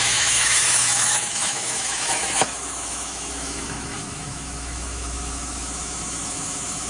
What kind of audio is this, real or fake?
fake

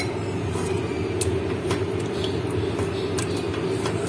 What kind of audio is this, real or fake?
real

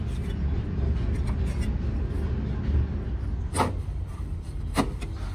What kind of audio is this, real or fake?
real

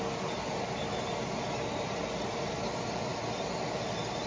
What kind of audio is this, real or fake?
real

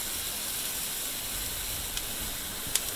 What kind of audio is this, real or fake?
real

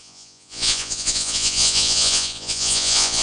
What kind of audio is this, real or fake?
fake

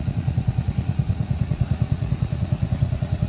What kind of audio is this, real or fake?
fake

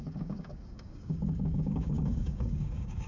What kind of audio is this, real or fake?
fake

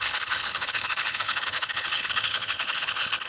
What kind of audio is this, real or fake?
fake